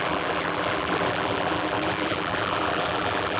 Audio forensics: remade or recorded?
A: remade